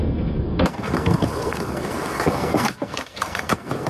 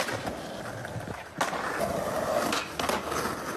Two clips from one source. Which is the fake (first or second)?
first